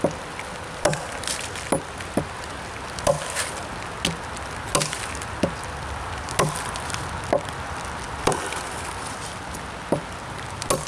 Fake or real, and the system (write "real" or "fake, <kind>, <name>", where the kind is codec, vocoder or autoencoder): real